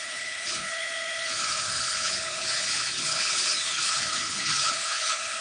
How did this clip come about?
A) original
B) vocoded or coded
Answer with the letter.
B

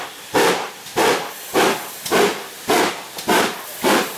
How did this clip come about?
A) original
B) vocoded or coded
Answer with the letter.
B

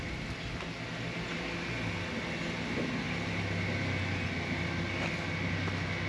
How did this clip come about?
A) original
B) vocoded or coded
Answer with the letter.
A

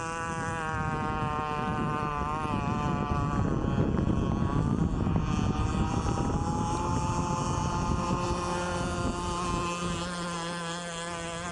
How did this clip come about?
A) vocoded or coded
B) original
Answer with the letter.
B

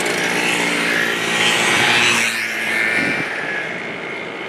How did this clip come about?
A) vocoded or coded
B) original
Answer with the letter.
B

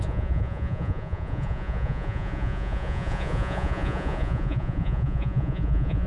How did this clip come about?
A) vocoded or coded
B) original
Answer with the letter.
A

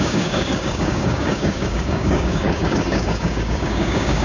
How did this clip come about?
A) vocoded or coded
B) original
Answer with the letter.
A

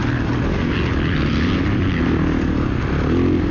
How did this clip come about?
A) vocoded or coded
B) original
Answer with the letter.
B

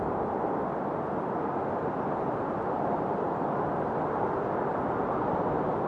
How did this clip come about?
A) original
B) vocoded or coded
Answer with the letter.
A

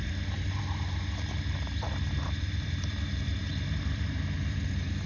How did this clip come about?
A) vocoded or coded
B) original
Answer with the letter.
A